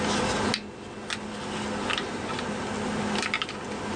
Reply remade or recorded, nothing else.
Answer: recorded